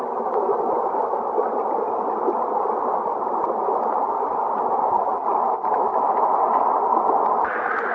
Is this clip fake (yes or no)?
no